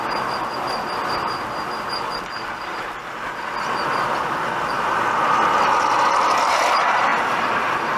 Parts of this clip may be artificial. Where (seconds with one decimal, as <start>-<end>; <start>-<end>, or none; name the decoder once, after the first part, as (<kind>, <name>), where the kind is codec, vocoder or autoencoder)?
none